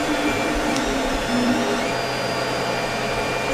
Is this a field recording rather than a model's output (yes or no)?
yes